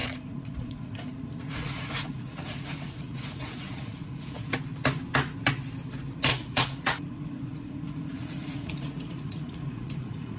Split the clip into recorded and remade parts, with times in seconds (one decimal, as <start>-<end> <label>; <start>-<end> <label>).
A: 0.0-4.5 remade; 4.5-6.3 recorded; 6.3-10.4 remade